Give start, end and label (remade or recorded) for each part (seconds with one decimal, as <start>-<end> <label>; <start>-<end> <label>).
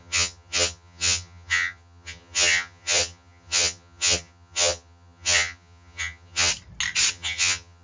0.0-6.5 remade; 6.5-7.1 recorded; 7.1-7.8 remade